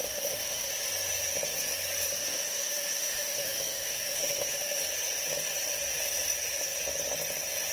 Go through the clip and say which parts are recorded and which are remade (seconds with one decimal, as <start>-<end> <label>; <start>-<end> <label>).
0.0-0.7 remade; 0.7-2.2 recorded; 2.2-4.8 remade; 4.8-7.7 recorded